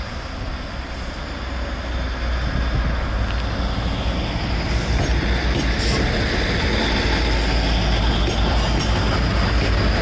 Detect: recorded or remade recorded